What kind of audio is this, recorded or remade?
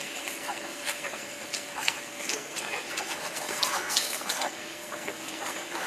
remade